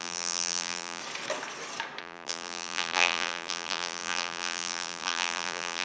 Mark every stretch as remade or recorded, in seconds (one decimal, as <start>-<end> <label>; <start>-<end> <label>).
0.0-1.0 remade; 1.0-2.0 recorded; 2.0-5.8 remade